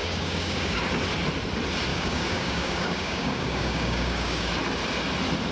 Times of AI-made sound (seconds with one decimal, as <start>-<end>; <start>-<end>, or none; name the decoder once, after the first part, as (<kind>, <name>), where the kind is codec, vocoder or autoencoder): 0.0-0.8 (codec, DAC); 1.9-4.5